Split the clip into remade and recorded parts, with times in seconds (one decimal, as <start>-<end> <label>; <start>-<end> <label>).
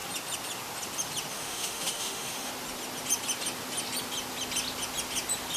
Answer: 0.0-1.3 recorded; 1.3-2.5 remade; 2.5-5.6 recorded